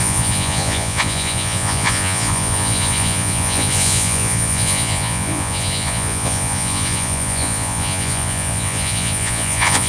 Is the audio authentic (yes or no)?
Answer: no